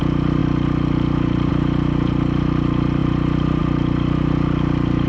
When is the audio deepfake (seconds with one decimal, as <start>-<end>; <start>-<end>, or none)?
0.0-5.1